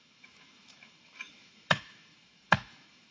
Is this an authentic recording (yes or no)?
no